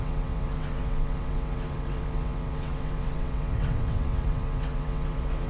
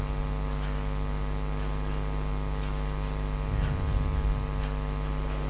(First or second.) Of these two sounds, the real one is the second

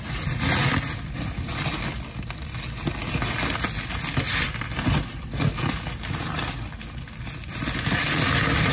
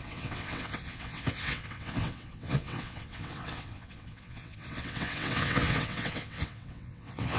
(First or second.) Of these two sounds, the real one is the first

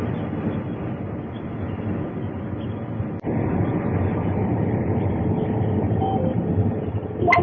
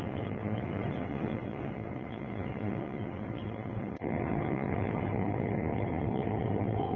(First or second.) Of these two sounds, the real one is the first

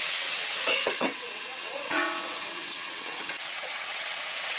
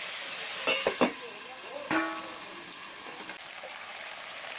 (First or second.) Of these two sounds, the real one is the second